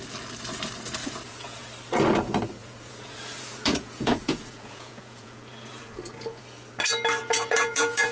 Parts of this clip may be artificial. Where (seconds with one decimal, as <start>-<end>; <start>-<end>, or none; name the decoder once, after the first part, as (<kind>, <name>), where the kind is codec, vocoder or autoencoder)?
1.0-1.7 (vocoder, Vocos); 2.6-6.4; 7.2-8.1